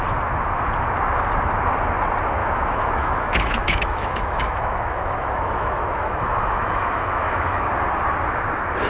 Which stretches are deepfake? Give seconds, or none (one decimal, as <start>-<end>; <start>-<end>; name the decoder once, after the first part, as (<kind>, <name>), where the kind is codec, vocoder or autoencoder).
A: 2.4-7.6 (autoencoder, DAC-VAE)